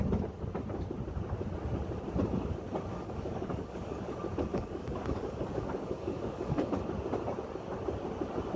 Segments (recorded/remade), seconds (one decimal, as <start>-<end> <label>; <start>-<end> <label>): 0.0-2.9 recorded; 2.9-4.1 remade; 4.1-4.5 recorded; 4.5-6.8 remade; 6.8-8.6 recorded